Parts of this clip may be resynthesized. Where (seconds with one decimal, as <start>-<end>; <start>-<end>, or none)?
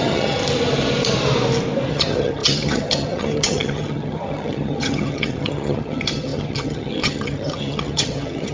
0.0-0.4; 1.9-8.5